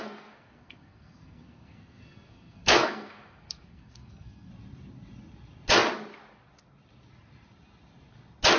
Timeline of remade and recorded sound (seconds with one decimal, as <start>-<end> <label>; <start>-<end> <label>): 0.0-4.5 remade; 4.5-8.6 recorded